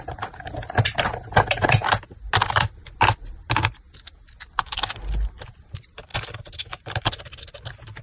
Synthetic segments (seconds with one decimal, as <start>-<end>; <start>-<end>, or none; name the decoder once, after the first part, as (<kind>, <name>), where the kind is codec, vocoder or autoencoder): none